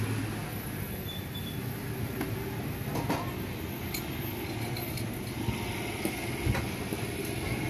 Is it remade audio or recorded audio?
recorded